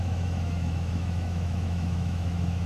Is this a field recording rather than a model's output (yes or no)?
no